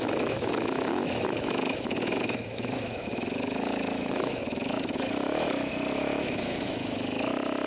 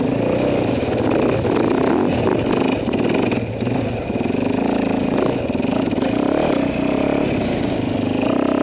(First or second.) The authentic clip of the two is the second